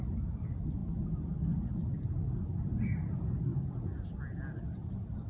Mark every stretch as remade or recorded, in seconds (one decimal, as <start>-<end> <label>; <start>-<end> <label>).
0.0-5.3 recorded